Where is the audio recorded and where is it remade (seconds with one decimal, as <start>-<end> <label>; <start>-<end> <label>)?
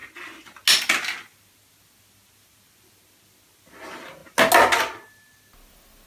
0.0-6.1 recorded